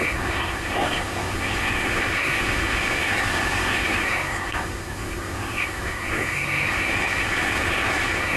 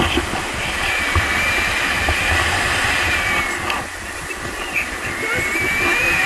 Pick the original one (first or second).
second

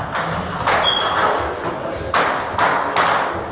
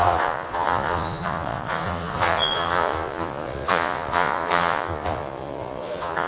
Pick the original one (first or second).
first